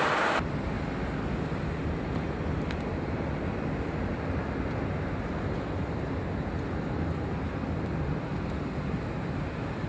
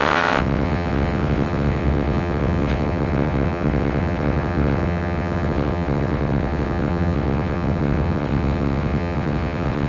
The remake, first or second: second